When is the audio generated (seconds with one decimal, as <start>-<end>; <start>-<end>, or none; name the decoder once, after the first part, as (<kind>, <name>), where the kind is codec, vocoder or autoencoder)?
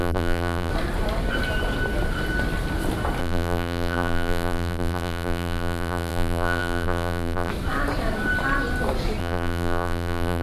0.0-0.7 (vocoder, BigVGAN v2); 3.2-7.5; 9.2-10.4